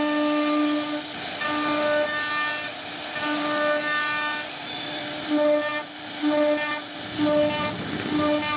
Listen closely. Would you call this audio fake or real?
real